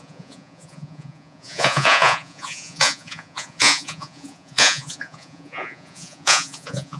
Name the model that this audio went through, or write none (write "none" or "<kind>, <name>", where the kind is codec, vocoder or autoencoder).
vocoder, Vocos